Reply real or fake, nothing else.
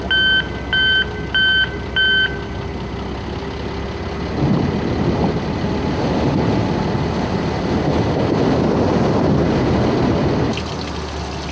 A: real